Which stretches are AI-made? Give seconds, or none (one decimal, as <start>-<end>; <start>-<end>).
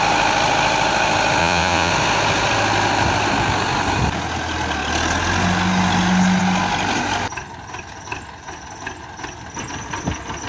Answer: 1.4-1.9